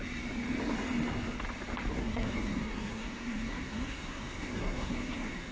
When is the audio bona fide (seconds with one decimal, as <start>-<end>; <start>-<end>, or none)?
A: 0.0-2.0